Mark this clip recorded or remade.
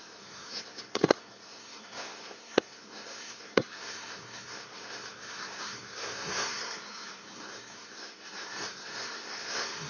remade